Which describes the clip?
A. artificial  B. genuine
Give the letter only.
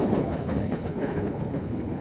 A